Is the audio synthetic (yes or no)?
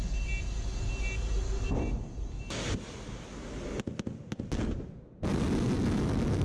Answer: no